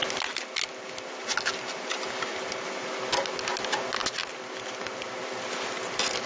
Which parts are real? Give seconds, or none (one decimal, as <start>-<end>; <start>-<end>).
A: 0.0-6.3